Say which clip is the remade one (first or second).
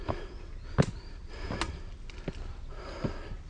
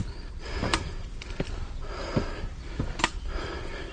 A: second